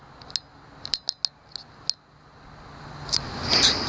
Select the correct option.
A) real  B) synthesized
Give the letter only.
A